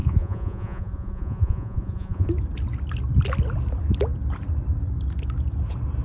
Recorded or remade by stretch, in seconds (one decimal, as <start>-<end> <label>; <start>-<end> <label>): 0.0-2.3 remade; 2.3-6.0 recorded